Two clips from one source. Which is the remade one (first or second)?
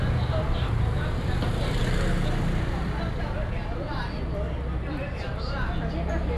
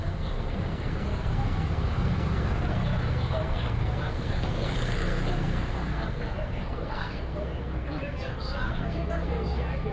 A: second